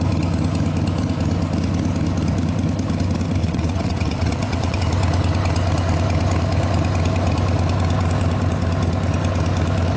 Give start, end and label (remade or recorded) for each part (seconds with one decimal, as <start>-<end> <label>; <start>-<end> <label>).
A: 0.0-3.4 recorded; 3.4-4.8 remade; 4.8-10.0 recorded

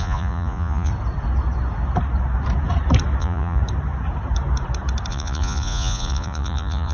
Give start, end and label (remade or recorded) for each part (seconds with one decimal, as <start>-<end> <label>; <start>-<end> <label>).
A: 0.0-0.9 remade; 0.9-3.2 recorded; 3.2-3.6 remade; 3.6-5.1 recorded; 5.1-6.9 remade

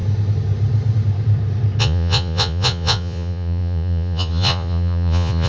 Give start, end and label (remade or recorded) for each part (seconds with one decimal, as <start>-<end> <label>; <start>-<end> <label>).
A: 0.0-1.8 recorded; 1.8-5.5 remade

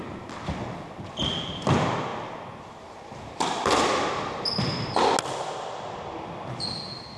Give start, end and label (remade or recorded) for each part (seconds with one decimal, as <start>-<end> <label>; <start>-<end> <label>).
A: 0.0-7.2 recorded

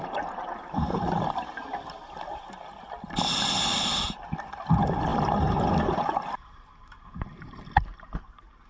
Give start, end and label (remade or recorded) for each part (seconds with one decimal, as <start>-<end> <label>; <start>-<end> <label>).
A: 0.0-8.7 recorded